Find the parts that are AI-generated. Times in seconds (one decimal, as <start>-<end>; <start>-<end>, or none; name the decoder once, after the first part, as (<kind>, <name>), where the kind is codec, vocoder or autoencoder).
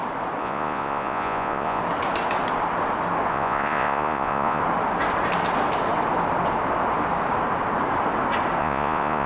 0.4-1.8 (vocoder, Vocos); 3.3-4.6; 8.6-9.3